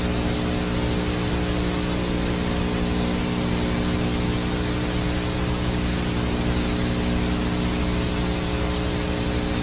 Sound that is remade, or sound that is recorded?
recorded